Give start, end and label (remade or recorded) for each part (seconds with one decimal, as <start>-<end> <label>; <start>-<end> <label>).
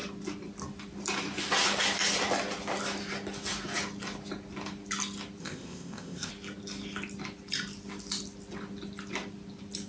0.0-5.4 recorded; 5.4-6.3 remade; 6.3-9.9 recorded